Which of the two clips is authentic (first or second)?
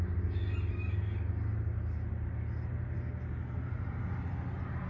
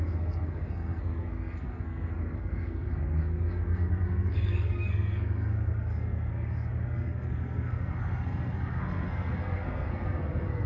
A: first